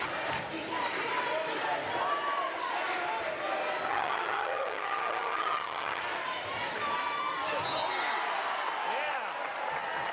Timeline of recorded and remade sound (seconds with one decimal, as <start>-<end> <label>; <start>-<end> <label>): 0.0-3.9 recorded; 3.9-6.0 remade; 6.0-10.1 recorded